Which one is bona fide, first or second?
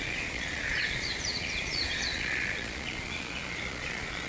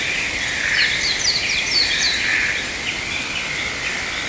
second